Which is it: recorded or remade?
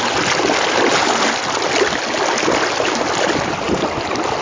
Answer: recorded